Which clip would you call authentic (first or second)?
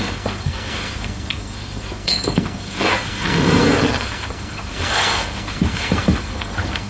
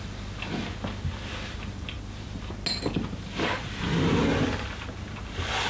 second